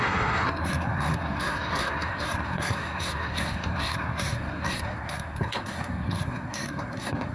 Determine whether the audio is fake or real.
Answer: fake